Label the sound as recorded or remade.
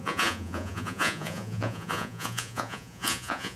remade